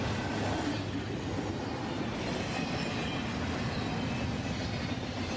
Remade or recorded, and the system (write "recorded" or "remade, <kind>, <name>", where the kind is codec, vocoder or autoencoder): recorded